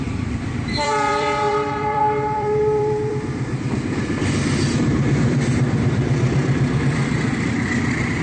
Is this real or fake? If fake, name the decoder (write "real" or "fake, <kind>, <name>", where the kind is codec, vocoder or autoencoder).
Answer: fake, vocoder, BigVGAN v2